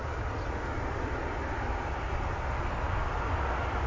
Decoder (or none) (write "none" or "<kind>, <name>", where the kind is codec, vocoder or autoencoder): none